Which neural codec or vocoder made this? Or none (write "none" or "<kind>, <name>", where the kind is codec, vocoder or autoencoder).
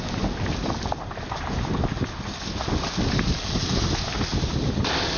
none